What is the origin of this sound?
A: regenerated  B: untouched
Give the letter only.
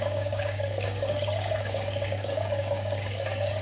A